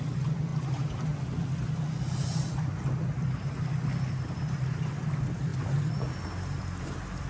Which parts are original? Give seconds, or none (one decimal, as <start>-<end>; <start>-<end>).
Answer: 0.5-4.9; 5.5-6.8